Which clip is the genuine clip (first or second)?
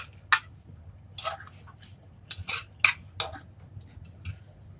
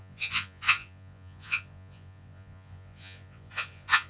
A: first